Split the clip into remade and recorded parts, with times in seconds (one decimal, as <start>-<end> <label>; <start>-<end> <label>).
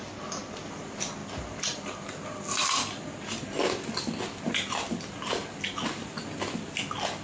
0.0-7.2 recorded